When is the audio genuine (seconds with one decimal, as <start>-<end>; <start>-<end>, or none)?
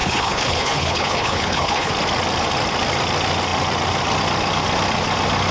1.9-5.5